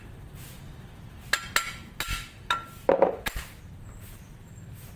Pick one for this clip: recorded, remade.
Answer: recorded